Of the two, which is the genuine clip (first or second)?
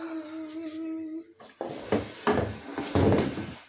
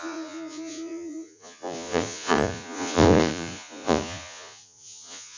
first